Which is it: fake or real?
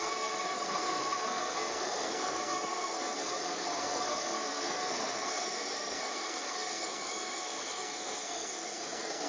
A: fake